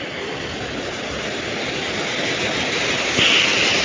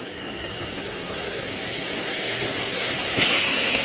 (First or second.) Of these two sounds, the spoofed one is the second